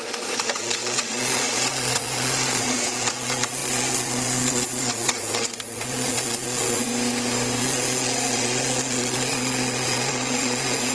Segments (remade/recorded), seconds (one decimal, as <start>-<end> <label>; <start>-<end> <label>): 0.0-6.9 remade; 6.9-7.6 recorded; 7.6-10.9 remade